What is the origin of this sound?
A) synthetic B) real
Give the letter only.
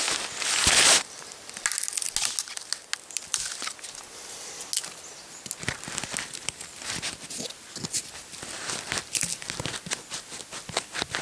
B